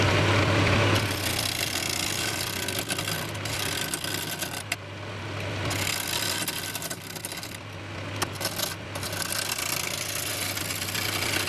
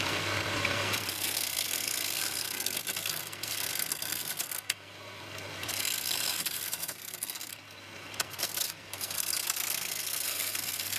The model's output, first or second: second